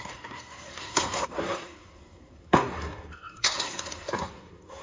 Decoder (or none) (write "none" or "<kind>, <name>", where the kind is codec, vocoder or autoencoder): codec, SNAC